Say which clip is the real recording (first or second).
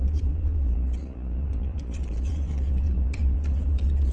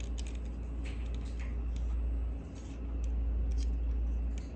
second